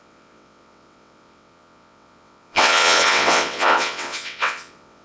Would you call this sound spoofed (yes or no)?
yes